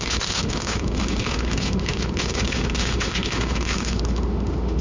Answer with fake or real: fake